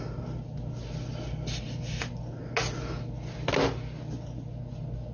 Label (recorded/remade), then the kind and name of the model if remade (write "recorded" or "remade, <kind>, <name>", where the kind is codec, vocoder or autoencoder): recorded